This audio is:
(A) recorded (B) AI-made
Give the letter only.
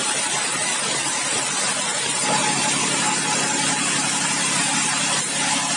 A